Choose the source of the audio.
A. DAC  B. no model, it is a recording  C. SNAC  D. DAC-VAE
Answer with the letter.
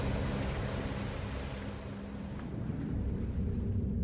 B